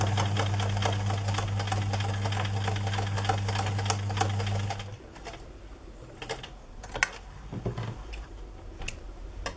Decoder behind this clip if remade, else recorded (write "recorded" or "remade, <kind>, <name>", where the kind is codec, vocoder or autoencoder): recorded